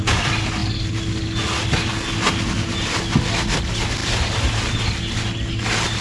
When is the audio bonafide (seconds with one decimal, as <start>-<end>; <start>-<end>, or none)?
0.0-6.0